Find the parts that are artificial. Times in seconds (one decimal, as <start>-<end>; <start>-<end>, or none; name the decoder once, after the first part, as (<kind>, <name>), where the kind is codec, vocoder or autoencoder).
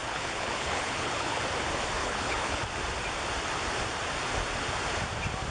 0.0-1.4 (codec, HILCodec); 2.0-2.6